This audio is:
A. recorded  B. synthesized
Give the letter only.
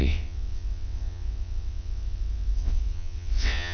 B